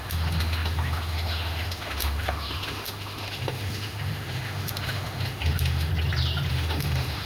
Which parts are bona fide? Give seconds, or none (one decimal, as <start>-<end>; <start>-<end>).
5.9-6.5